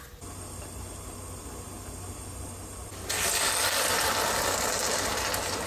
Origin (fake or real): real